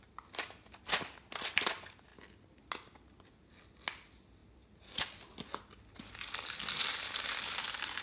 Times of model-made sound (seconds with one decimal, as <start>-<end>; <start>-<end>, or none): none